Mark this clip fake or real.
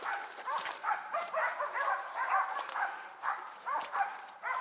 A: fake